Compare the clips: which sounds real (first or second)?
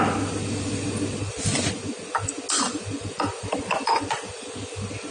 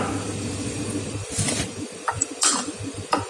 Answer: first